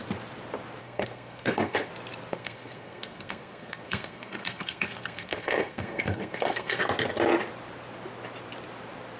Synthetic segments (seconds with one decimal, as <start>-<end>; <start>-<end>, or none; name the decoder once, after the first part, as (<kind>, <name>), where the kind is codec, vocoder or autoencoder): 0.8-1.9 (codec, SNAC); 2.3-6.8